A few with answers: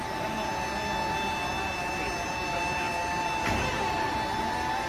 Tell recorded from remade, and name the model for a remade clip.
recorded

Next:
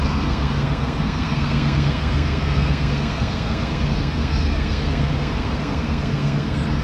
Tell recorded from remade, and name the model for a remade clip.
remade, codec, SNAC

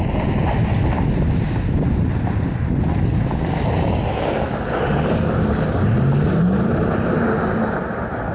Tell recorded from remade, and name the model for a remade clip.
recorded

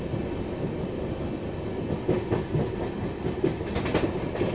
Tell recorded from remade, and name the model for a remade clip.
recorded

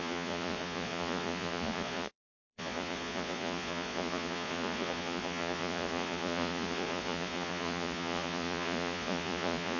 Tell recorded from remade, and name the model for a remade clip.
remade, vocoder, Vocos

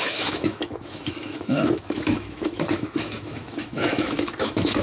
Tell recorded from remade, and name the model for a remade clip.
remade, autoencoder, DAC-VAE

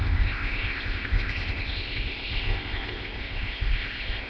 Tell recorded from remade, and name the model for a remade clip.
remade, codec, ZipCodec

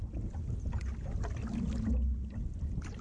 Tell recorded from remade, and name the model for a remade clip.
recorded